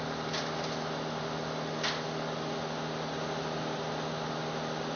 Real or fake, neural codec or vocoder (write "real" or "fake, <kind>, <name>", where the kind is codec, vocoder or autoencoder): real